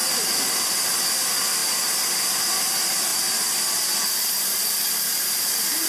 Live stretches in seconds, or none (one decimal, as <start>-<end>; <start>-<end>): 0.0-0.6; 3.1-4.9